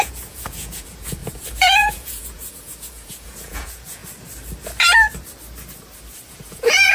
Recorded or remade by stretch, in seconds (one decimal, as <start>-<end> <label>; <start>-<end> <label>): 0.0-4.0 remade; 4.0-6.3 recorded; 6.3-6.9 remade